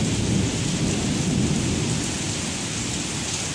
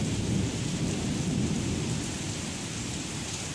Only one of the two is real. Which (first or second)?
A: first